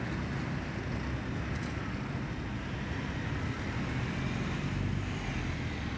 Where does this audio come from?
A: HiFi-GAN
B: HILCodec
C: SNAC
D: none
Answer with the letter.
D